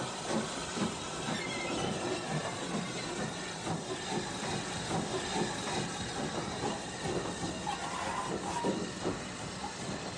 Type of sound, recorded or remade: recorded